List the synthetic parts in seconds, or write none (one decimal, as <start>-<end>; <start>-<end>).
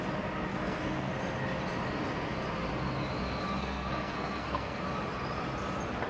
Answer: 0.5-1.1; 3.6-4.8